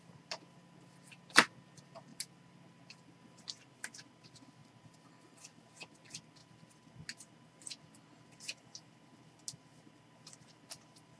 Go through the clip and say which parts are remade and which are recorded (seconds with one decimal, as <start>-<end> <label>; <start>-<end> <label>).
0.0-4.6 recorded; 4.6-5.6 remade; 5.6-11.2 recorded